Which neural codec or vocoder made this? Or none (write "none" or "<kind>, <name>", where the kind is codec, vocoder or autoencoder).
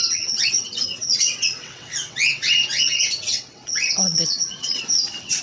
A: vocoder, WaveNeXt